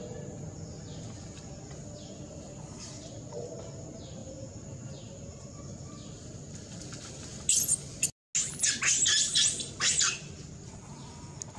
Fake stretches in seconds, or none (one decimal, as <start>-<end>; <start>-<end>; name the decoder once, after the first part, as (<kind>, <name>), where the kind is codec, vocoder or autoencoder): none

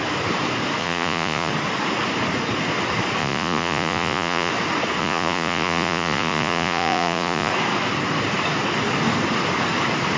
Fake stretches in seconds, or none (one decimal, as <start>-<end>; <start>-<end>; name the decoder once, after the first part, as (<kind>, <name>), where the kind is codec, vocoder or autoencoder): 0.8-1.5 (vocoder, Vocos); 3.2-4.5; 5.0-7.5

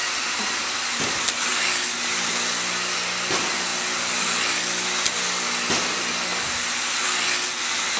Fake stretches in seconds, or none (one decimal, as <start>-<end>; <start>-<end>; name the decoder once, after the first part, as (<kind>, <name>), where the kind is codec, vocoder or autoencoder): none

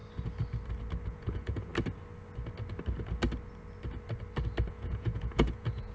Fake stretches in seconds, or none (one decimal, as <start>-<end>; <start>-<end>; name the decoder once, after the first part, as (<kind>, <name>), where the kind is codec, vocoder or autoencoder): 1.1-1.7 (vocoder, Vocos); 4.7-5.9

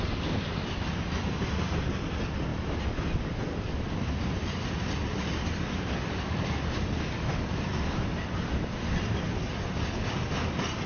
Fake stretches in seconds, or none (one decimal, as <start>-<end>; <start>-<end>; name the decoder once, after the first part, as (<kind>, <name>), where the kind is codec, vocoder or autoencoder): none

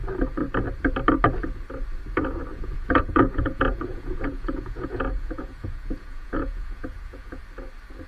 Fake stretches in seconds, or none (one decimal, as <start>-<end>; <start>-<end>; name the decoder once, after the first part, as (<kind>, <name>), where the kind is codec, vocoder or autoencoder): 2.5-7.4 (vocoder, Vocos)

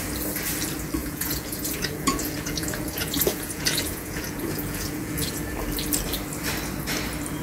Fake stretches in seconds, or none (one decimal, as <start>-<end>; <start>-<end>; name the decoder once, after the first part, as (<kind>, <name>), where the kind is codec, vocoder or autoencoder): 1.0-5.3 (vocoder, Vocos)

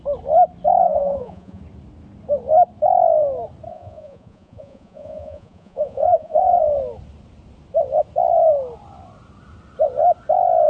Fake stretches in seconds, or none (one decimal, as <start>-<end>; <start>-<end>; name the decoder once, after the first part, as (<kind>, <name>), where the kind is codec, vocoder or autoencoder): 0.8-1.6 (vocoder, Vocos); 3.7-6.6